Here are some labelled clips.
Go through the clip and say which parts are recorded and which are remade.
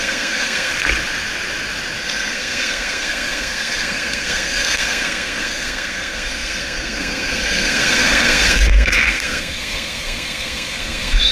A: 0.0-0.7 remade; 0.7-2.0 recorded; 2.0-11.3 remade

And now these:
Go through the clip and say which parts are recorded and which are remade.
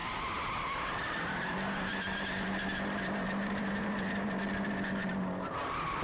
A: 0.0-6.0 remade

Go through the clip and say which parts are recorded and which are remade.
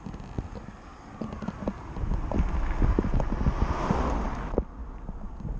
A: 0.0-5.6 recorded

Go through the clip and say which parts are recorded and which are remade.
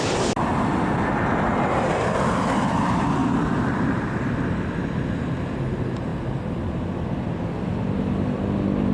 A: 0.0-8.9 recorded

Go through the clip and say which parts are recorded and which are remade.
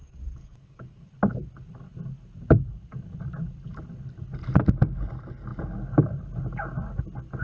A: 0.0-1.1 remade; 1.1-7.4 recorded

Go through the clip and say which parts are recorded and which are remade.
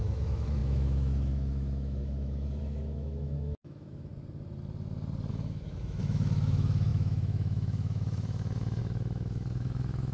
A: 0.0-4.1 remade; 4.1-5.3 recorded; 5.3-10.1 remade